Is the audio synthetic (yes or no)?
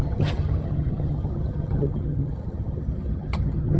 yes